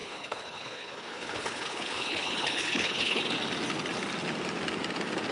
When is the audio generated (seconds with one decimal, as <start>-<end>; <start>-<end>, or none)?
0.0-3.2